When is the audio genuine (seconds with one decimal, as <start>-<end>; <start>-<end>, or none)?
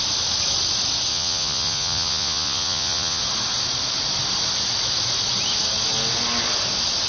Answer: 0.0-1.1; 3.2-7.1